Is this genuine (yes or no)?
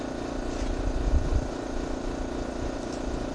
no